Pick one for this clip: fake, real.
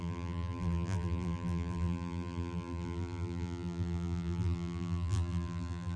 fake